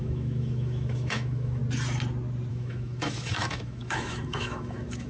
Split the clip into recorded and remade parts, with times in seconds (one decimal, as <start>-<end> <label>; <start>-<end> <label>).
0.0-1.6 remade; 1.6-2.5 recorded; 2.5-5.1 remade